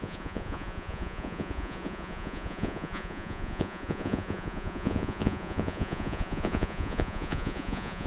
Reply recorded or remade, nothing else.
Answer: remade